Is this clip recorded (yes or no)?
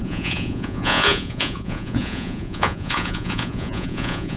no